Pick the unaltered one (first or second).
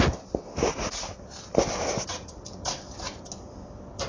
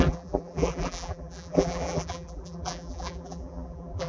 first